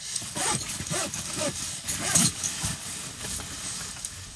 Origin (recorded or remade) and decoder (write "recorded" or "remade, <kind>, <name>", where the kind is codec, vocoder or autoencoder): remade, codec, DAC